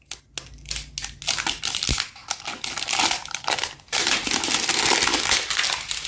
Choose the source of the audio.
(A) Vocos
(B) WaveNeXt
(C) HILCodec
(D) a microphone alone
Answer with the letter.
D